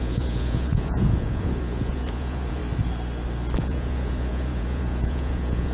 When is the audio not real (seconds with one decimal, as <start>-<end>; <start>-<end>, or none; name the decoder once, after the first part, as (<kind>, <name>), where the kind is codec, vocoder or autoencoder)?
0.0-2.6 (vocoder, Vocos); 3.6-5.7